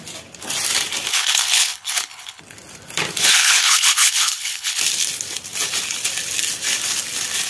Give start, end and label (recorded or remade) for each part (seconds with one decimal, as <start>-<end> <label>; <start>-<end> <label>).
0.0-1.1 recorded; 1.1-2.4 remade; 2.4-3.3 recorded; 3.3-4.8 remade; 4.8-7.5 recorded